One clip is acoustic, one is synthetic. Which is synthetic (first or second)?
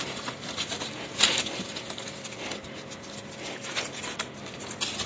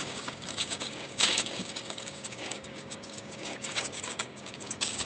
second